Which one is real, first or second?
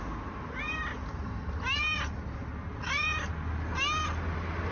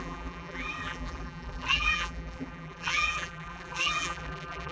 first